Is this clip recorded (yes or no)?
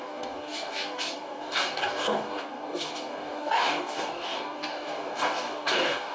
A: no